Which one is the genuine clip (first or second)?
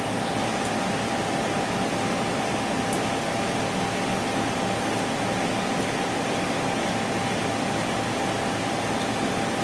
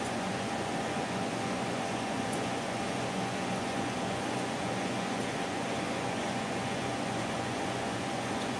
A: first